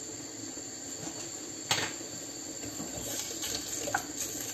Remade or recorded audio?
recorded